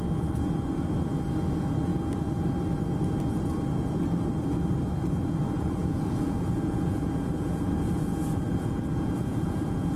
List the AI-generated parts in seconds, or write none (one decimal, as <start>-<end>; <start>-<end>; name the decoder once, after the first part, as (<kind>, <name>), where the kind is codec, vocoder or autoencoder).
5.8-10.0 (vocoder, Vocos)